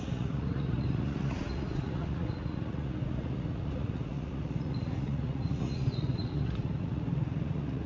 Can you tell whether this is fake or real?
fake